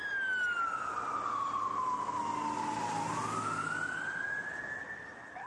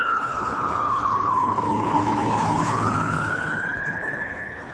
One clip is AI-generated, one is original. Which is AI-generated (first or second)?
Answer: second